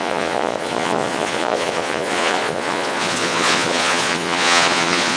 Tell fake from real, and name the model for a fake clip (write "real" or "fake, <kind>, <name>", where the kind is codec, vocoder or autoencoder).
fake, vocoder, Vocos